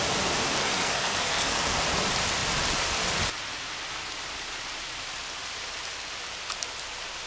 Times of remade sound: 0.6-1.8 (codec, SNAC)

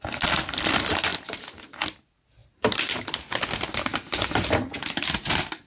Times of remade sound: 1.1-1.6 (vocoder, BigVGAN v2); 2.4-3.0; 3.9-5.1

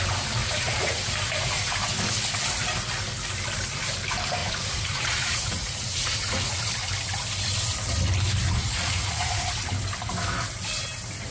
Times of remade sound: 0.4-1.0 (vocoder, Vocos); 4.4-6.6; 8.6-9.4

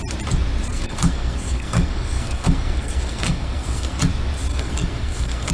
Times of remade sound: 0.7-4.0 (codec, SNAC); 4.5-5.5